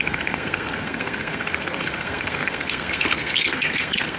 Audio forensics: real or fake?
fake